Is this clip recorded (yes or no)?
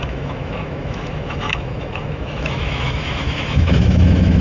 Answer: no